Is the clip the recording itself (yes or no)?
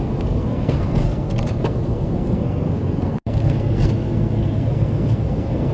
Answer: no